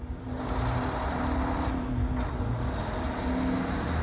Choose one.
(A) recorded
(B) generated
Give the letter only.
A